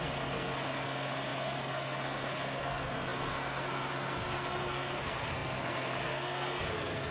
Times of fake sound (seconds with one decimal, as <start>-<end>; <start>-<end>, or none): 0.0-7.1